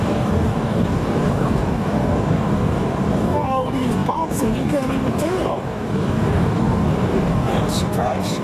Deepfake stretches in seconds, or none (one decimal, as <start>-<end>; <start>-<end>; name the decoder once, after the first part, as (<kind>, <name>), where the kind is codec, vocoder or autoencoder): 0.0-8.4 (codec, DAC)